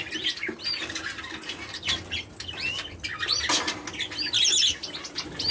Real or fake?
real